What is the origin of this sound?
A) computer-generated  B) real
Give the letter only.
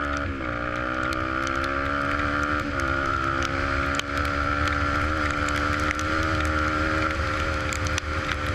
B